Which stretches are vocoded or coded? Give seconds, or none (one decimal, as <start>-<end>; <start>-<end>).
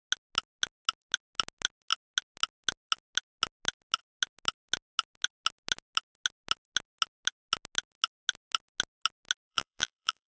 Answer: 9.5-10.3